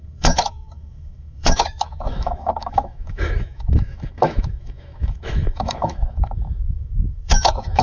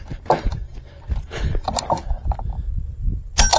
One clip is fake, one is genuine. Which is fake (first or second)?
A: first